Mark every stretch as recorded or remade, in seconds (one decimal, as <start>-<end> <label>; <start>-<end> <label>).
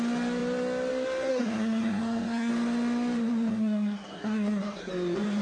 0.0-1.3 recorded; 1.3-2.5 remade; 2.5-3.5 recorded; 3.5-4.9 remade; 4.9-5.4 recorded